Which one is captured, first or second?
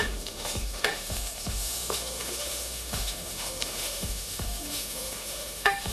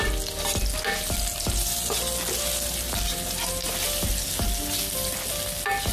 second